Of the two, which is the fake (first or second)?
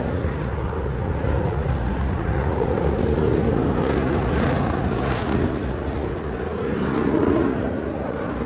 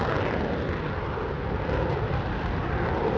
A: first